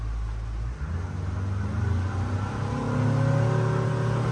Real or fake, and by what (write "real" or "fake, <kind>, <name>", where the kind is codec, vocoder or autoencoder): real